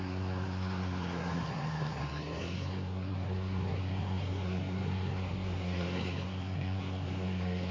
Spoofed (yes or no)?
yes